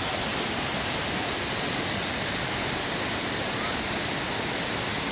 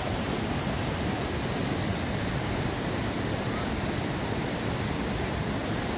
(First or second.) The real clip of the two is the first